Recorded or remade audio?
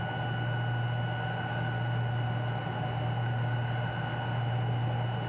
recorded